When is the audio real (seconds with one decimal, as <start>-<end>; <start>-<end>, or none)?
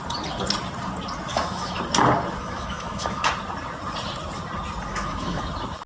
0.0-1.3; 1.8-2.4; 3.3-4.9; 5.4-5.9